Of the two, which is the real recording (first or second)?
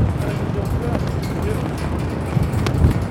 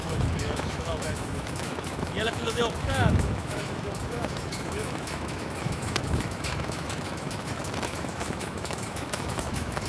first